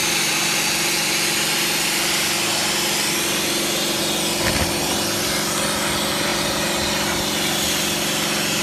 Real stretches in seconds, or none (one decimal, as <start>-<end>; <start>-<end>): 0.0-8.6